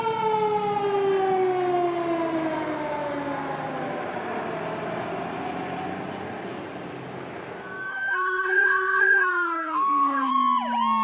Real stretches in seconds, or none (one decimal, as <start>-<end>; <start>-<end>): 0.0-7.9; 10.3-11.0